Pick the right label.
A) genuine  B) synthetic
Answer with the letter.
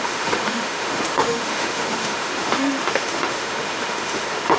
B